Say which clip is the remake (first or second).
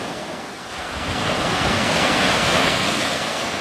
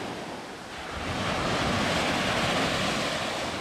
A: first